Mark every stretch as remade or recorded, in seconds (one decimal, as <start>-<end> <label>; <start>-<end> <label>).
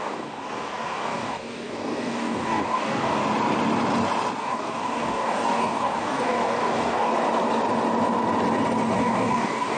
0.0-3.2 remade; 3.2-4.4 recorded; 4.4-7.1 remade; 7.1-9.0 recorded; 9.0-9.8 remade